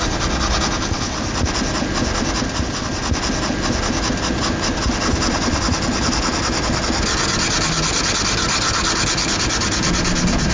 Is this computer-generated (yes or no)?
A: no